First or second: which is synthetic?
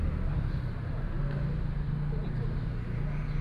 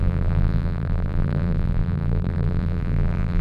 second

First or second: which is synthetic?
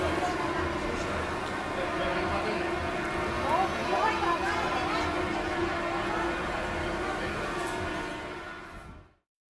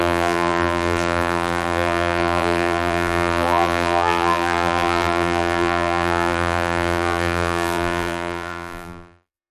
second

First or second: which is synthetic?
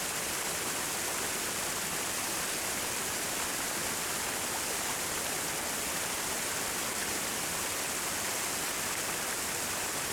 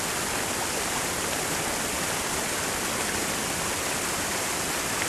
second